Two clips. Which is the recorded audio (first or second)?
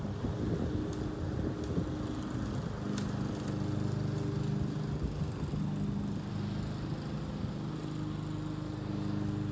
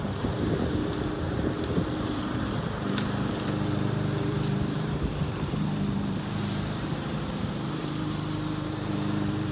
first